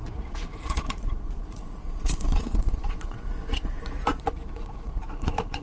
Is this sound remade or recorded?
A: remade